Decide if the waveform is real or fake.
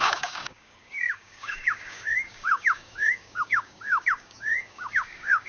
fake